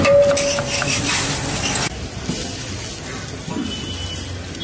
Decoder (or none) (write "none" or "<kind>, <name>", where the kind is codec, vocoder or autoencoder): none